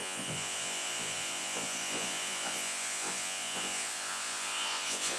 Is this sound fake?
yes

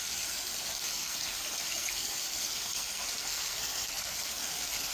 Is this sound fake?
yes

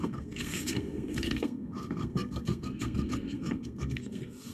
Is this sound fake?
yes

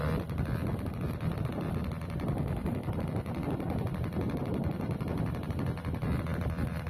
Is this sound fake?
yes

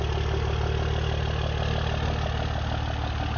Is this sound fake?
no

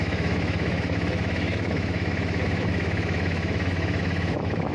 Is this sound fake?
yes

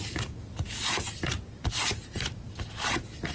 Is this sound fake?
no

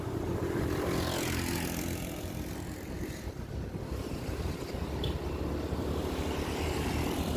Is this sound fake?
no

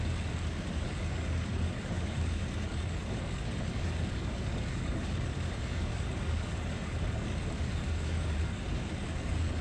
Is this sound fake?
yes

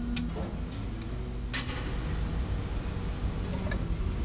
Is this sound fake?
no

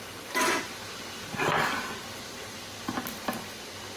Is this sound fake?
no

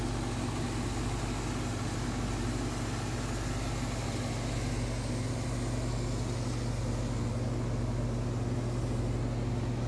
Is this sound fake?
no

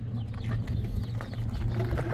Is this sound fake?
no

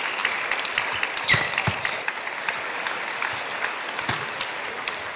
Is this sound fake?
no